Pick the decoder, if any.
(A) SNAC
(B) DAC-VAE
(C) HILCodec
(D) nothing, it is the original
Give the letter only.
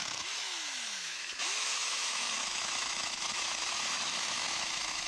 B